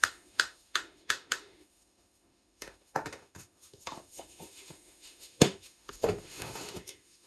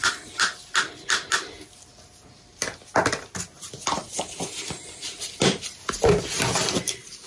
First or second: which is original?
second